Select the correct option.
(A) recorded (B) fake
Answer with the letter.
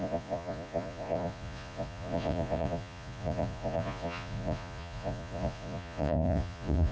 B